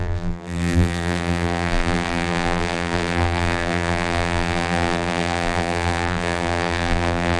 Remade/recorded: remade